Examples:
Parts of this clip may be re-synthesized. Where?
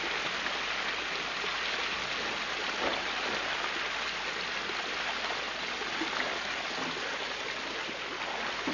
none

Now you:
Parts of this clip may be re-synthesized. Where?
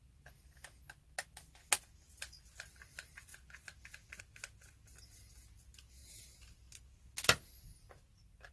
none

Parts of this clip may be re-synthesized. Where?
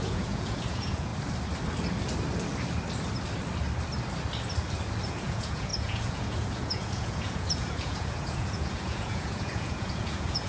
0.0-1.1 (vocoder, Vocos); 5.1-10.5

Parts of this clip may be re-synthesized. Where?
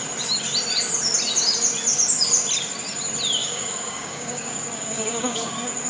3.4-5.5 (codec, DAC)